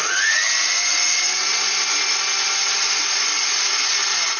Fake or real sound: real